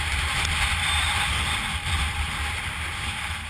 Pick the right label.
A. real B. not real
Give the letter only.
A